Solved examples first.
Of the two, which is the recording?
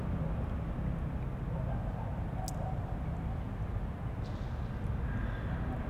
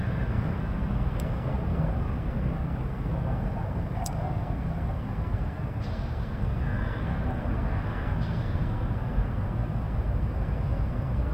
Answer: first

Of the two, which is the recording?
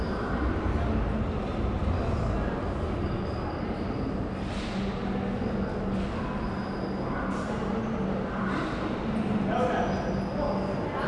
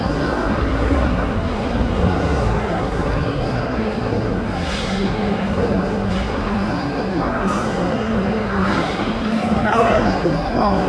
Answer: first